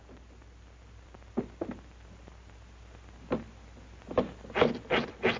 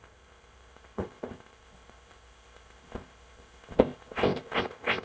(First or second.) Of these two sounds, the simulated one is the second